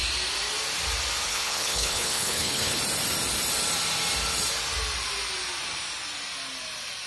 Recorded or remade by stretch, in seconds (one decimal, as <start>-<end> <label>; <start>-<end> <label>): 0.0-1.3 recorded; 1.3-2.8 remade; 2.8-7.1 recorded